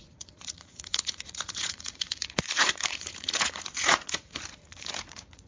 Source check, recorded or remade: remade